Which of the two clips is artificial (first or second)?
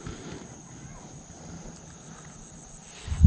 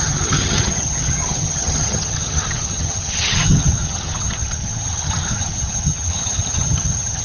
second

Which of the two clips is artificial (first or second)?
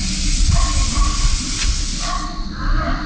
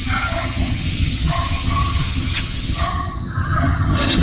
second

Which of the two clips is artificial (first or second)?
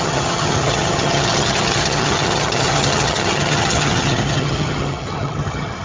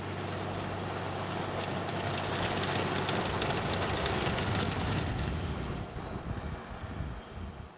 first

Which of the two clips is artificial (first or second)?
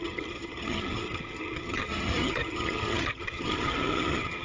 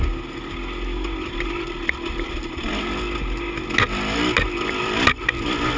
first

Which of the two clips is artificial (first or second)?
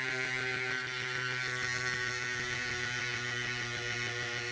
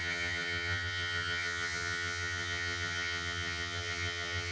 second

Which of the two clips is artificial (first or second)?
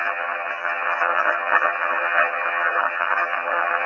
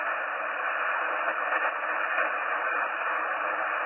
first